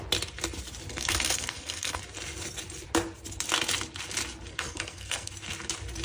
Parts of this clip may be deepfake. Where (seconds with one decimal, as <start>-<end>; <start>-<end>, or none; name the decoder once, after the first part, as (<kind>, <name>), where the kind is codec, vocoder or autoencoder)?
0.9-2.0 (codec, SNAC); 4.5-5.3